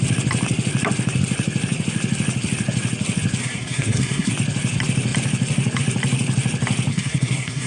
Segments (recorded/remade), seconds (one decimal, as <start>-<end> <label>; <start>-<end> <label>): 0.0-3.4 recorded; 3.4-4.3 remade; 4.3-6.9 recorded; 6.9-7.7 remade